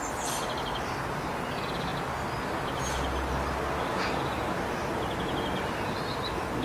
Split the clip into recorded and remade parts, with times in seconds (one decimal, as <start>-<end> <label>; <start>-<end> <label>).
0.0-6.6 recorded

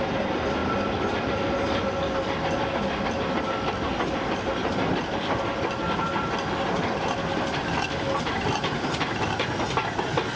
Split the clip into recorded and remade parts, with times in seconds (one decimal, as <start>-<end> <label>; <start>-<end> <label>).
0.0-10.4 recorded

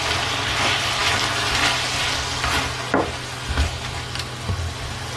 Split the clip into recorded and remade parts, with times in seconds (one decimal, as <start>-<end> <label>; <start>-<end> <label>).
0.0-5.2 recorded

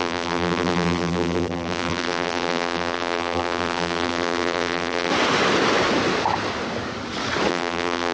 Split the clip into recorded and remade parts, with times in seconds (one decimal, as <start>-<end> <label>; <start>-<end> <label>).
0.0-5.1 remade; 5.1-7.5 recorded; 7.5-8.1 remade

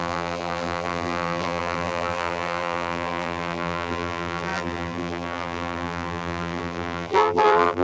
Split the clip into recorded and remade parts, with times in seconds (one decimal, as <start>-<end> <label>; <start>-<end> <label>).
0.0-7.8 remade

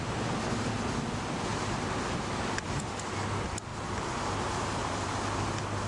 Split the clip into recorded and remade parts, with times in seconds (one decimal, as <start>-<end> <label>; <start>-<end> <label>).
0.0-3.7 recorded; 3.7-4.8 remade; 4.8-5.9 recorded